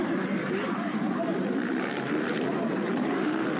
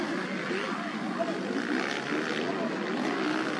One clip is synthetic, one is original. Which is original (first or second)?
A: second